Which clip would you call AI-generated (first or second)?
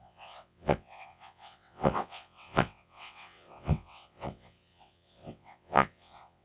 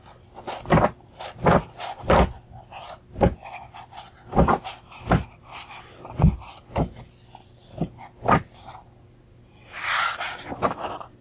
first